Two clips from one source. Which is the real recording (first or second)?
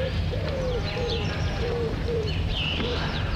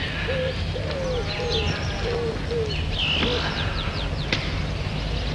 second